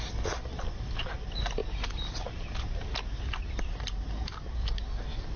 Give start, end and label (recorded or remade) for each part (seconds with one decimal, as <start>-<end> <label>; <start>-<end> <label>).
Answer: 0.0-1.6 recorded; 1.6-4.8 remade; 4.8-5.4 recorded